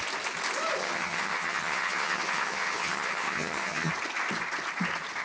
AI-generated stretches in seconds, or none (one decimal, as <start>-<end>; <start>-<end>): 0.8-3.9